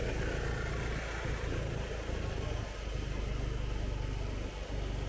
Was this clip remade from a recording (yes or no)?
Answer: no